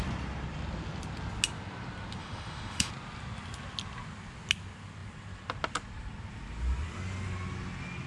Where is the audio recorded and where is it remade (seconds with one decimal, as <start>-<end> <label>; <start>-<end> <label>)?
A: 0.0-2.2 recorded; 2.2-2.9 remade; 2.9-8.1 recorded